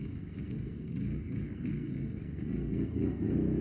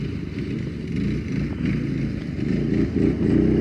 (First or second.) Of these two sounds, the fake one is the first